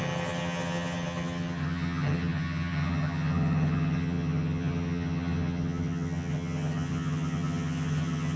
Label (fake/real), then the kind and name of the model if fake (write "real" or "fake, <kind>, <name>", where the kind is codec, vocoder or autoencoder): fake, vocoder, HiFi-GAN